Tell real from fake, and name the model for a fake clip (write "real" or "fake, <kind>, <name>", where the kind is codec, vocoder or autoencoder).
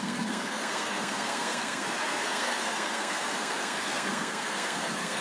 fake, codec, SNAC